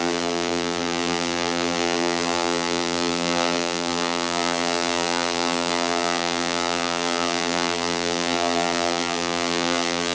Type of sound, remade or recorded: remade